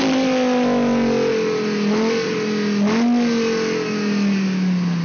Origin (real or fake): real